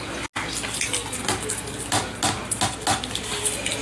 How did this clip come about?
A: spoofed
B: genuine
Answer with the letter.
B